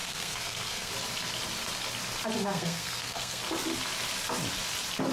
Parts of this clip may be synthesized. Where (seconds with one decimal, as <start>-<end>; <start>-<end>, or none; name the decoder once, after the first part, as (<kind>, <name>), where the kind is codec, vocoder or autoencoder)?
0.0-0.9 (codec, SNAC); 2.4-3.4